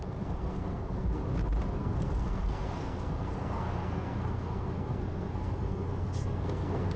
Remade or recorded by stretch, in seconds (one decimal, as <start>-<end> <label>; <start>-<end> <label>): 0.0-1.3 remade; 1.3-1.8 recorded; 1.8-7.0 remade

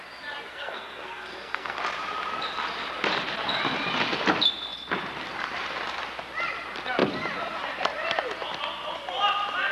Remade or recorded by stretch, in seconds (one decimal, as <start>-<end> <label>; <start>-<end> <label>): 0.0-0.5 recorded; 0.5-1.8 remade; 1.8-9.7 recorded

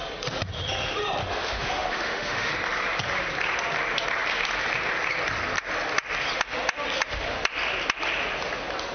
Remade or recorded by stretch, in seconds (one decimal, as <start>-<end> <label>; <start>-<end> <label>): 0.0-1.2 recorded; 1.2-2.5 remade; 2.5-8.9 recorded